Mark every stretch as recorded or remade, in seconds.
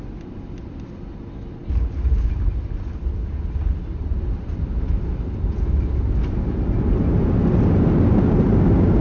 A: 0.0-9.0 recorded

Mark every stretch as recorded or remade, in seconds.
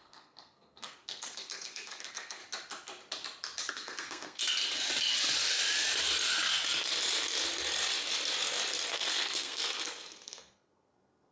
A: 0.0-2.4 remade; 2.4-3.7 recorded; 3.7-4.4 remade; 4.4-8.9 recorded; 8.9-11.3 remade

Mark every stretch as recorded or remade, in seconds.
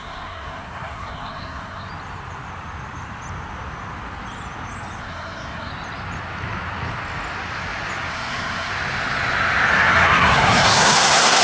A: 0.0-1.9 remade; 1.9-5.0 recorded; 5.0-5.7 remade; 5.7-8.1 recorded; 8.1-8.7 remade; 8.7-9.7 recorded; 9.7-11.4 remade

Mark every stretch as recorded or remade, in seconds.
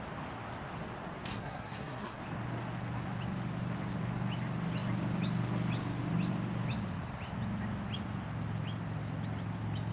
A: 0.0-1.3 recorded; 1.3-2.2 remade; 2.2-9.9 recorded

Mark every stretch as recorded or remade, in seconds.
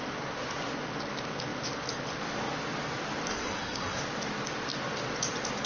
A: 0.0-3.3 recorded; 3.3-4.0 remade; 4.0-5.7 recorded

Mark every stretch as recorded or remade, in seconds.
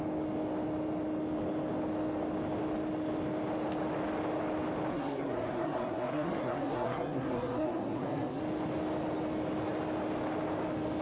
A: 0.0-4.9 recorded; 4.9-8.4 remade; 8.4-11.0 recorded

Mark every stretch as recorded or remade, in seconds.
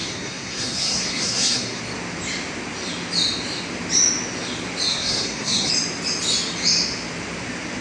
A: 0.0-1.8 remade; 1.8-4.9 recorded; 4.9-5.7 remade; 5.7-7.8 recorded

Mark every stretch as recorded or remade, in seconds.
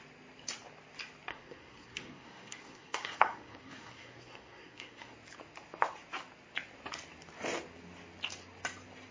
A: 0.0-1.3 recorded; 1.3-5.1 remade; 5.1-9.1 recorded